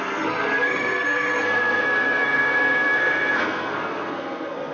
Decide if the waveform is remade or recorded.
remade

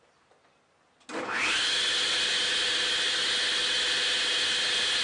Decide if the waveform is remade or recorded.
recorded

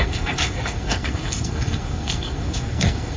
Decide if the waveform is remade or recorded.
remade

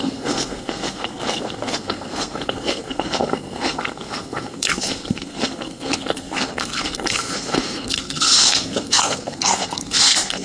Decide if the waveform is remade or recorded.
remade